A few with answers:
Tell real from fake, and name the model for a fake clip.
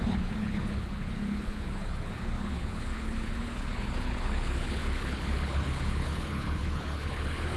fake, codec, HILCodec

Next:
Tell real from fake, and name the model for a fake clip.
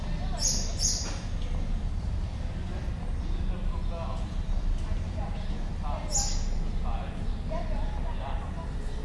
real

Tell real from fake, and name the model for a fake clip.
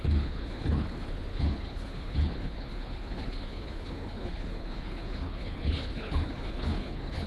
fake, codec, HILCodec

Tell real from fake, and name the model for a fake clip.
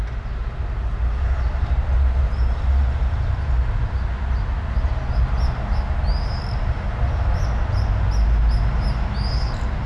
real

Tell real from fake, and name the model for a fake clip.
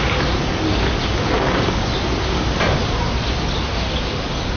real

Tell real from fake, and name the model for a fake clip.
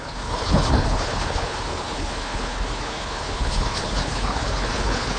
fake, codec, HILCodec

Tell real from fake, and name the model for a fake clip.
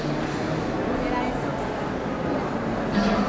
real